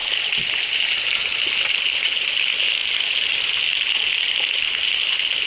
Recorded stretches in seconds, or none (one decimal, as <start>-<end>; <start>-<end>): 0.0-5.5